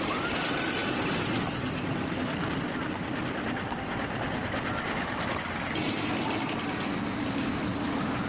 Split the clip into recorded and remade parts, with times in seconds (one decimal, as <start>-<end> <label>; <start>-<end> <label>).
0.0-8.3 recorded